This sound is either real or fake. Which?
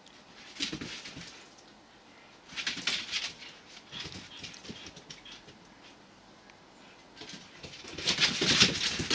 real